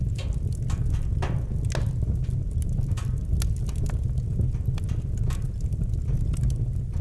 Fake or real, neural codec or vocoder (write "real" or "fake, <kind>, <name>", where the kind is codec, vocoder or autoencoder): real